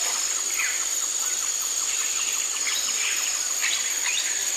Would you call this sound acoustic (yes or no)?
no